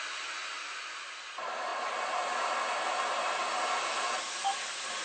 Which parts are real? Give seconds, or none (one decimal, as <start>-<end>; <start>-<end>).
1.7-5.0